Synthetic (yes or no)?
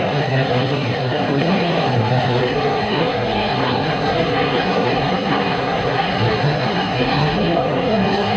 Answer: yes